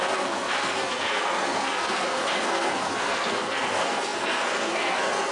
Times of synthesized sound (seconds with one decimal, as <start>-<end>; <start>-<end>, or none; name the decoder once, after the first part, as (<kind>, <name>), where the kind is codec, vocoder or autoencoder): 0.0-5.3 (codec, SNAC)